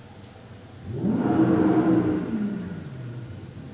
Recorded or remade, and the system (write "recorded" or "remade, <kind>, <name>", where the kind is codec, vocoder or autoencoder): recorded